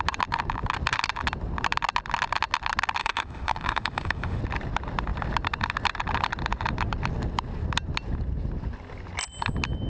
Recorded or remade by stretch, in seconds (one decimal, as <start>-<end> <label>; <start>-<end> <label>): 0.0-3.0 recorded; 3.0-4.4 remade; 4.4-9.9 recorded